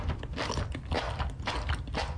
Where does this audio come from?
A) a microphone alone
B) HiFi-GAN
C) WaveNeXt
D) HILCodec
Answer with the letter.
A